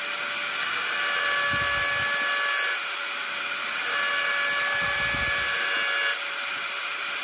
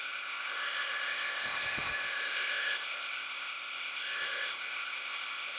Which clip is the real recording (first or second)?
first